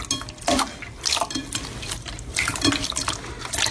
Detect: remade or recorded recorded